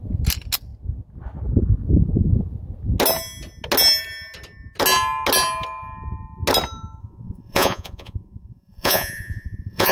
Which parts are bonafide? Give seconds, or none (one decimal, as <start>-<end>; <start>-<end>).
0.0-7.0